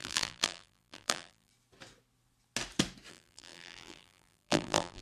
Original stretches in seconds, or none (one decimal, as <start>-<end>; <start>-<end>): 1.5-3.1